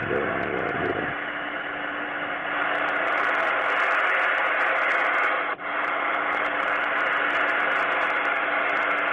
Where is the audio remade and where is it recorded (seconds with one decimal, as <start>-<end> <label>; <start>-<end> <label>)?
0.0-9.1 recorded